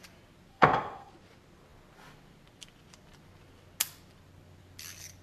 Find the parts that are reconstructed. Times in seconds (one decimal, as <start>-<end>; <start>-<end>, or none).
0.5-1.1

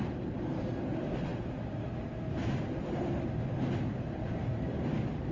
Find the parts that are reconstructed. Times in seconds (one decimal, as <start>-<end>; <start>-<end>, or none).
none

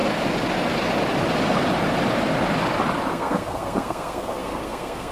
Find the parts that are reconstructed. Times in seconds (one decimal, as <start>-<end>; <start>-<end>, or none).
3.1-5.1

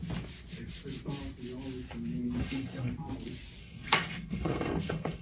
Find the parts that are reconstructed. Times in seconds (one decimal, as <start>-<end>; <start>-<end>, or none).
2.4-2.9; 3.6-5.2

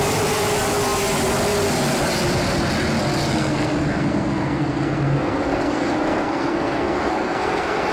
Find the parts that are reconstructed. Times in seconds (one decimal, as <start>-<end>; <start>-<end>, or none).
3.3-7.9

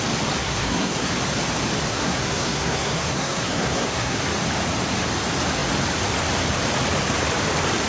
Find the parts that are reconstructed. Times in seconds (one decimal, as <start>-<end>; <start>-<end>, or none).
0.4-1.1; 1.9-4.2

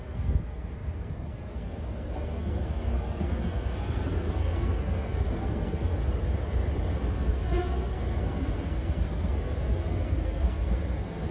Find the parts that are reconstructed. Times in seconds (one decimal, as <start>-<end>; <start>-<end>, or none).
0.0-6.0; 7.1-11.3

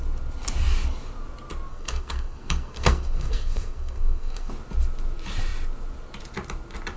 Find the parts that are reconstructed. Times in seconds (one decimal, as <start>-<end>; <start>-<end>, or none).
1.7-4.5